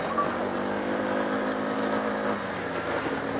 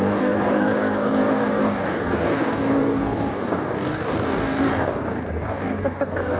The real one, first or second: first